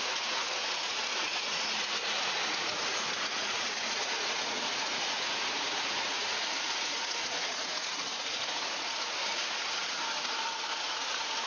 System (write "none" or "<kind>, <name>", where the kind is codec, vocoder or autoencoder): vocoder, Vocos